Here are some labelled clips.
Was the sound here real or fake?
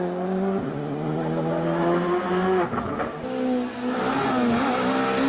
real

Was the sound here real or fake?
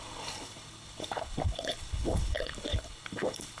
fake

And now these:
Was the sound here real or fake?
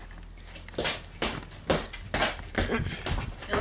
real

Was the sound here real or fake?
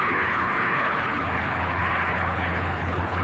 fake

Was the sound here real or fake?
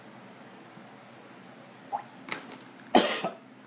real